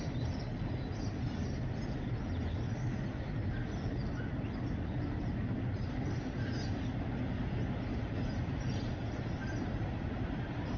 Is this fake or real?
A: real